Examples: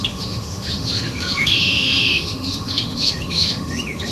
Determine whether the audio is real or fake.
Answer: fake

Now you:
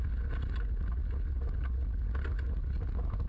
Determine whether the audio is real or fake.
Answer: real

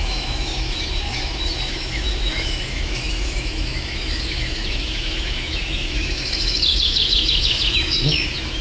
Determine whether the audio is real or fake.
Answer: fake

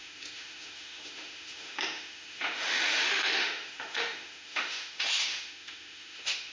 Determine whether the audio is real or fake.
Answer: fake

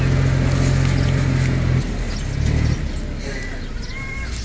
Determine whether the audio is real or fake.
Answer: real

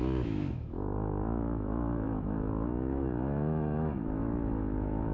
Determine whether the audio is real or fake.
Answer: fake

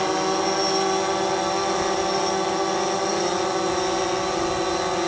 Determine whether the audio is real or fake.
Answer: real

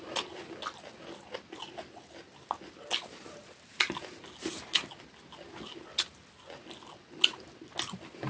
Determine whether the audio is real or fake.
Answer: real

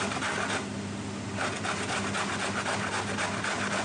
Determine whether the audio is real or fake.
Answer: real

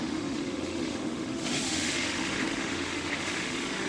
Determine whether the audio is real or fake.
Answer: fake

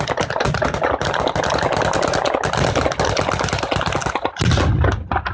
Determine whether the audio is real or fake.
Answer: real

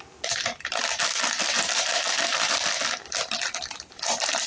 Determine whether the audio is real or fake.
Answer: real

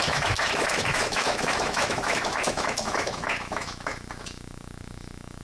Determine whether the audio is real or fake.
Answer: fake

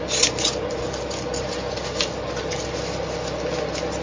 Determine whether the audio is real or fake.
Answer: real